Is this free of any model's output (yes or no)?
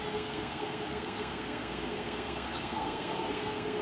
no